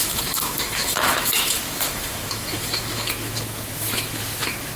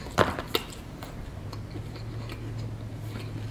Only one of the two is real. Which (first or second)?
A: second